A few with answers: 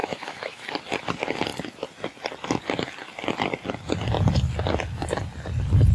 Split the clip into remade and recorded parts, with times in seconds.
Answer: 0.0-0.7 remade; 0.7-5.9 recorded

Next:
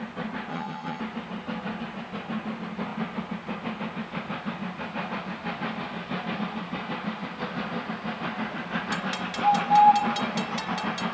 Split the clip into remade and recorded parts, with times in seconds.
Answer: 0.0-0.5 recorded; 0.5-1.0 remade; 1.0-11.1 recorded

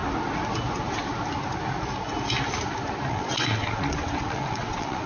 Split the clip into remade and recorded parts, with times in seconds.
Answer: 0.0-3.1 recorded; 3.1-5.1 remade